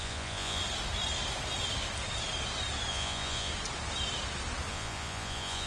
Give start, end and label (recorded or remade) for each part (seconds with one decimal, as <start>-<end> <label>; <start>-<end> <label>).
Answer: 0.0-0.6 remade; 0.6-2.9 recorded; 2.9-3.5 remade; 3.5-4.7 recorded; 4.7-5.7 remade